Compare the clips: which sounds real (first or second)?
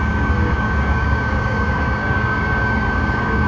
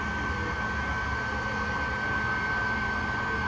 second